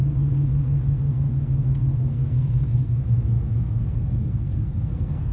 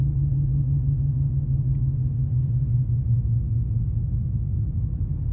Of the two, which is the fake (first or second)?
first